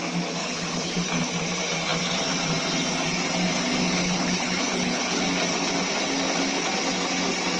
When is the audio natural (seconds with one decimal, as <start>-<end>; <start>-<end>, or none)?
0.0-0.4; 1.3-4.0; 5.2-7.6